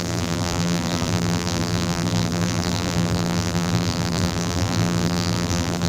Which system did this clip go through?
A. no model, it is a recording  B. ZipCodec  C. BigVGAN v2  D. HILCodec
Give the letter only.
C